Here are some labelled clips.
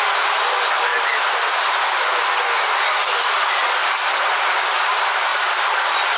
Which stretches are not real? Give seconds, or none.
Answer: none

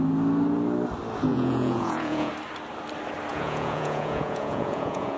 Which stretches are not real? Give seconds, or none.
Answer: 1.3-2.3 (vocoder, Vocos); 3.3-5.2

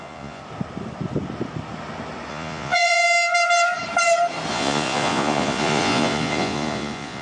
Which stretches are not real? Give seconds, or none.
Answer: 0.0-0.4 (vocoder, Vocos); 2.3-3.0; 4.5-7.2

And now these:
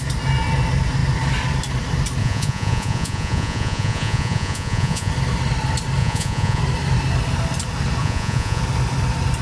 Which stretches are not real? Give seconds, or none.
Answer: 2.2-5.1 (vocoder, Vocos); 6.0-6.6; 8.0-8.6